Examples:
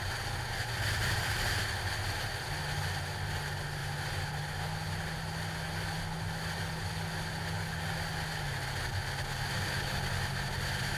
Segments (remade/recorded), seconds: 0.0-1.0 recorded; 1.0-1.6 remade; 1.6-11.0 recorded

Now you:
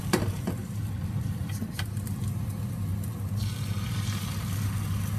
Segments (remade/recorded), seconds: 0.0-0.6 recorded; 0.6-2.2 remade; 2.2-5.2 recorded

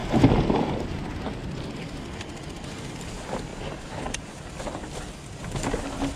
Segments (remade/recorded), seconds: 0.0-6.2 recorded

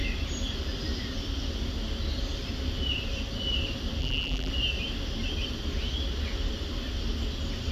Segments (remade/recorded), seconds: 0.0-4.0 recorded; 4.0-4.5 remade; 4.5-7.7 recorded

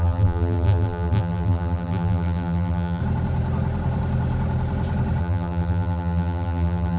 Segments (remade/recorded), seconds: 0.0-3.0 remade; 3.0-5.2 recorded; 5.2-7.0 remade

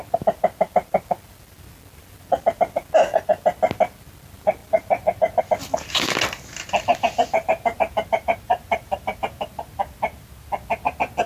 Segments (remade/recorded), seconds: 0.0-6.9 recorded; 6.9-9.7 remade; 9.7-11.3 recorded

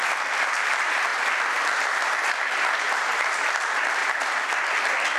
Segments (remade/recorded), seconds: 0.0-4.0 remade; 4.0-5.2 recorded